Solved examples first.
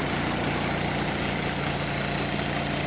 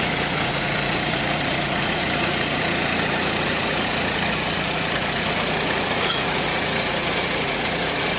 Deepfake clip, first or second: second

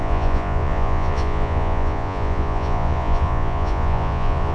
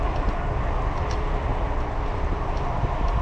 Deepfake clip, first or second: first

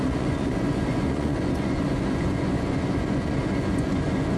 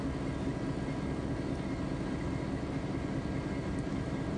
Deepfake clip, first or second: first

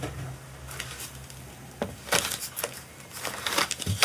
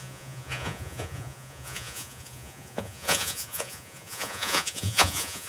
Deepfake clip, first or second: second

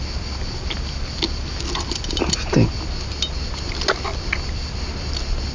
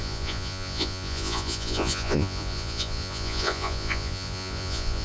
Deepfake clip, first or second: second